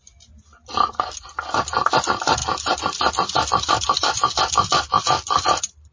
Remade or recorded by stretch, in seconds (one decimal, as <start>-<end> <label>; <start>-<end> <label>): 0.0-0.9 remade; 0.9-2.4 recorded; 2.4-5.9 remade